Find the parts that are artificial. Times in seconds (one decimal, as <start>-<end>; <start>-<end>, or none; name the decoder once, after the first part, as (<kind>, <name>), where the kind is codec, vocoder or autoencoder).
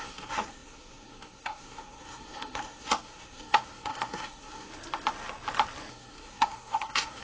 0.0-4.7 (codec, SNAC); 5.9-7.2